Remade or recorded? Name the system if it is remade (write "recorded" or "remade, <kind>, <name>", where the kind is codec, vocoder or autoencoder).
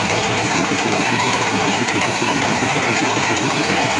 remade, codec, SNAC